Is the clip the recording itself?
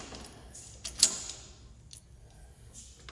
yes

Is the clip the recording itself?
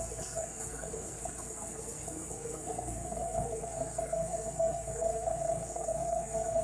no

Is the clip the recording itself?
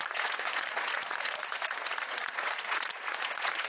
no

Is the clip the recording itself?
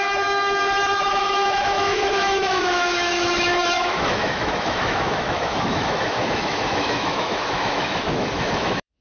no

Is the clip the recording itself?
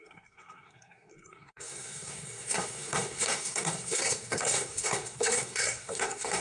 no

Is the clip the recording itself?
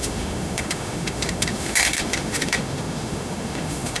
no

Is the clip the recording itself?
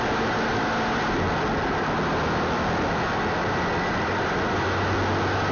yes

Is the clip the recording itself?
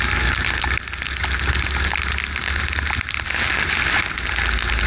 yes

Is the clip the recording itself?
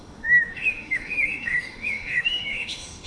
no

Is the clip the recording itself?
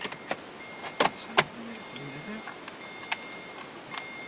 yes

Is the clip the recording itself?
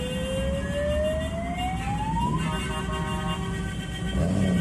yes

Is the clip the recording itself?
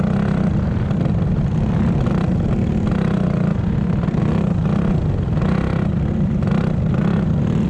yes